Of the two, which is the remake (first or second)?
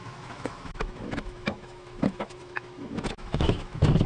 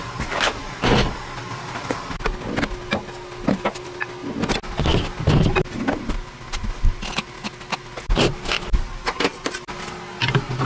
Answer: first